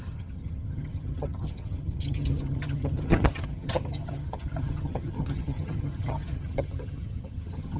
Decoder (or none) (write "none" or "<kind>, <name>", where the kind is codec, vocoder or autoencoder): vocoder, HiFi-GAN